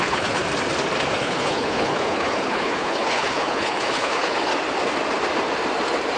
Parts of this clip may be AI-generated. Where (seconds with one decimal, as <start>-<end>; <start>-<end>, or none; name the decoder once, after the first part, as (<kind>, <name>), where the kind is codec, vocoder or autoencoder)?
0.0-0.4 (codec, HILCodec); 1.2-4.5

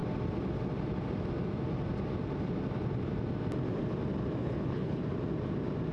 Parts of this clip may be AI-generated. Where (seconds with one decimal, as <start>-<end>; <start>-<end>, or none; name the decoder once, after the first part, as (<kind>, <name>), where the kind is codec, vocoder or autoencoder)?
4.4-5.0 (codec, HILCodec)

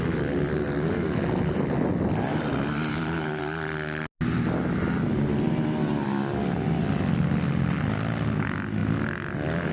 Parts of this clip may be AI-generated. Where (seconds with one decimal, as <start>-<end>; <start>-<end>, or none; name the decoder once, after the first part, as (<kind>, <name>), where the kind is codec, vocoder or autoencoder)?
2.9-3.4 (codec, HILCodec)

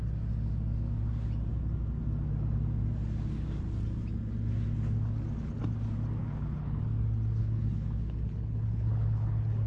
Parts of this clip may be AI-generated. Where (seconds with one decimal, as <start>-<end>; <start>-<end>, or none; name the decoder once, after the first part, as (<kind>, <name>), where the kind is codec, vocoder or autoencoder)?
6.2-6.8 (codec, HILCodec); 7.4-9.7

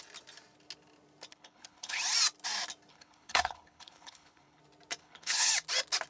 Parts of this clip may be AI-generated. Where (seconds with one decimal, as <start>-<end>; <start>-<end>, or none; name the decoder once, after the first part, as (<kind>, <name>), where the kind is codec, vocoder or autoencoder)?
1.3-2.0 (codec, HILCodec); 2.9-4.6; 5.0-5.5

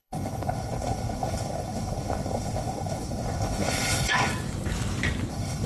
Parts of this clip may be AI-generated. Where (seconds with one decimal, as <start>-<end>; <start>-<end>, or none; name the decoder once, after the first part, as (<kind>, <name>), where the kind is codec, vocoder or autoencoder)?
0.0-4.3 (codec, HILCodec); 5.3-5.7

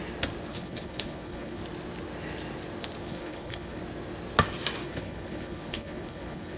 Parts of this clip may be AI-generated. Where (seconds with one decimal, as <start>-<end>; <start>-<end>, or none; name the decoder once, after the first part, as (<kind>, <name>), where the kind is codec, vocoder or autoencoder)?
0.5-1.6 (codec, HILCodec); 3.0-3.8; 4.8-6.6

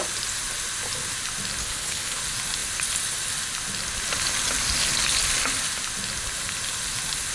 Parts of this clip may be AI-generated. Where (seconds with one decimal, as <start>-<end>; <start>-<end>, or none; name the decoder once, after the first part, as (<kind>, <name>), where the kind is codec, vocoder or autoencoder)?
1.6-2.2 (codec, HILCodec)